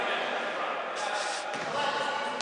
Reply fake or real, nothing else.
real